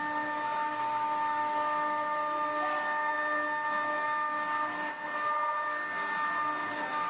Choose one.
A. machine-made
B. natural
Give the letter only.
B